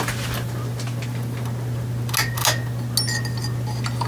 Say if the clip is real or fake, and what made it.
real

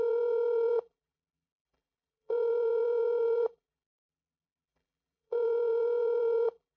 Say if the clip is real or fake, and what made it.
fake, vocoder, BigVGAN v2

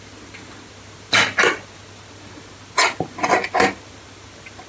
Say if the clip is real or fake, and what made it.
real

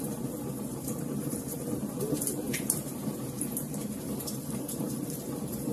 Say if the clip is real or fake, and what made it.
fake, vocoder, BigVGAN v2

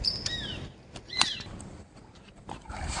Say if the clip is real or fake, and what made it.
fake, vocoder, BigVGAN v2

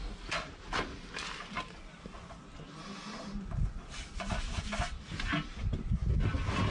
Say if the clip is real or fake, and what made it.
real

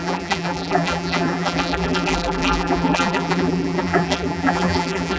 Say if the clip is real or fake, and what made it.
fake, vocoder, BigVGAN v2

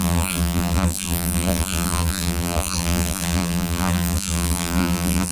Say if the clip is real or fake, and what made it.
fake, vocoder, BigVGAN v2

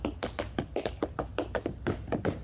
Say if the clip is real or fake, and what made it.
real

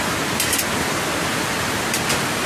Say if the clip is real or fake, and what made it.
real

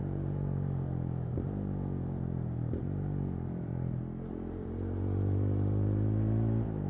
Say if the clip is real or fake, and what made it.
fake, vocoder, BigVGAN v2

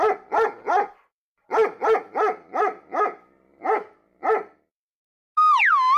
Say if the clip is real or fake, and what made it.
real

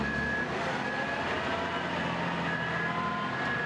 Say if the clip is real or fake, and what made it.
real